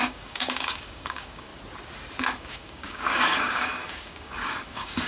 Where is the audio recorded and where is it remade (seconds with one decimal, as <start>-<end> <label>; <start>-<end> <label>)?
0.0-1.5 remade; 1.5-2.4 recorded; 2.4-5.1 remade

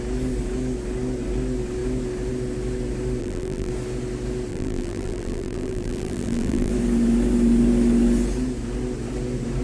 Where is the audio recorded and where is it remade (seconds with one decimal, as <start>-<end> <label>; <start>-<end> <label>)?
0.0-3.2 recorded; 3.2-3.7 remade; 3.7-4.5 recorded; 4.5-6.7 remade; 6.7-9.6 recorded

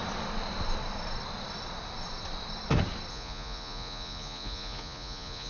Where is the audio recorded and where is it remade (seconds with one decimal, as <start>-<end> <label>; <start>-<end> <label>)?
0.0-3.1 recorded; 3.1-5.5 remade

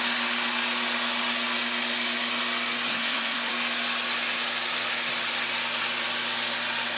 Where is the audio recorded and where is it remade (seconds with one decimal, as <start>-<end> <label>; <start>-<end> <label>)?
0.0-2.9 recorded; 2.9-3.5 remade; 3.5-7.0 recorded